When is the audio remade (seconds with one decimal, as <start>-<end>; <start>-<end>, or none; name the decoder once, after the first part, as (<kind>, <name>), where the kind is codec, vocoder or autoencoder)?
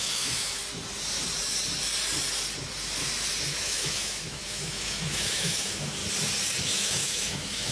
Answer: 0.0-0.6 (autoencoder, DAC-VAE); 3.5-6.0; 6.6-7.7